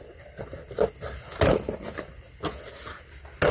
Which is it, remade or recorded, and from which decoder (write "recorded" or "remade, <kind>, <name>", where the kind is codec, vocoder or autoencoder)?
recorded